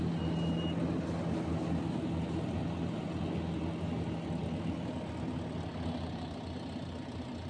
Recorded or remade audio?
recorded